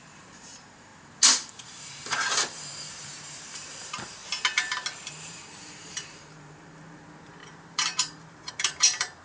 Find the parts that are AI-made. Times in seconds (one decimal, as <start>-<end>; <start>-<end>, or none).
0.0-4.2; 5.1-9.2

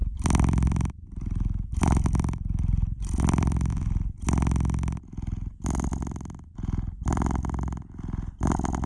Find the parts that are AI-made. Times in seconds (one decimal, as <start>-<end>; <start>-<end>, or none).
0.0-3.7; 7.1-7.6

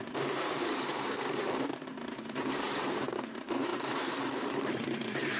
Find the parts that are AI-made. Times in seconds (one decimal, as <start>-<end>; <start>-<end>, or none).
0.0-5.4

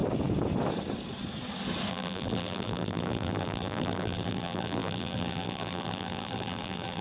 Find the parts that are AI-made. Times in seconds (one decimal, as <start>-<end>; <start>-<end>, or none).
1.9-7.0

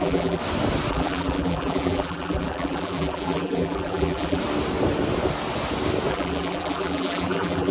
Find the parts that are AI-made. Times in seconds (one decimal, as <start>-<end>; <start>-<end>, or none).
0.0-0.4; 0.9-4.4; 6.1-7.7

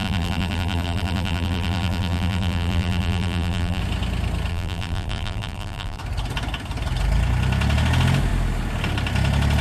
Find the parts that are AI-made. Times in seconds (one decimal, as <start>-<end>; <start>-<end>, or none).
0.0-3.8; 4.5-6.0

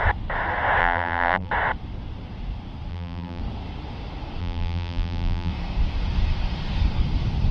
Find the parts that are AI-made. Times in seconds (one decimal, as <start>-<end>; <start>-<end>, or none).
0.8-1.5; 2.9-3.4; 4.4-5.5

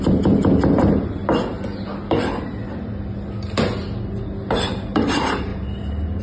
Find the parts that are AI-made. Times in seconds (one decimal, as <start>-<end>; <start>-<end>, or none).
0.0-1.2; 4.6-5.5